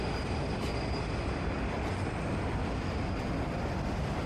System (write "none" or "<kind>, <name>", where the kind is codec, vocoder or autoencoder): none